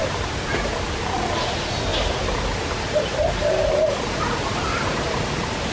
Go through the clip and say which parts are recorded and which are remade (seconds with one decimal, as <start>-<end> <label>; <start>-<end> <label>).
0.0-0.6 remade; 0.6-1.9 recorded; 1.9-3.9 remade; 3.9-4.5 recorded; 4.5-5.2 remade; 5.2-5.7 recorded